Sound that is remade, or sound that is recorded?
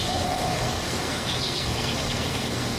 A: remade